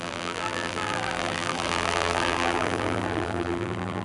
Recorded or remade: remade